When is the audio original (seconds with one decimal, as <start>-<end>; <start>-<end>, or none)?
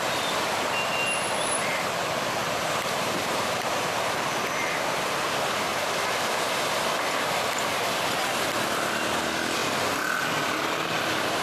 0.0-2.4; 4.3-11.4